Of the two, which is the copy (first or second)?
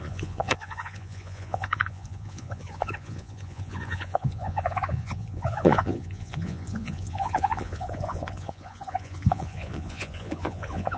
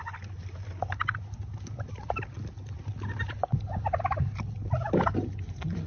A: first